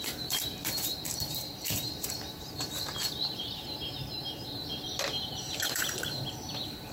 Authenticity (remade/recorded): remade